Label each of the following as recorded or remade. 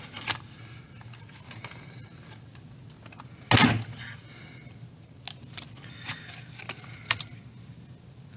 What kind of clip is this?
recorded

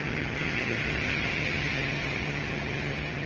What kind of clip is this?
remade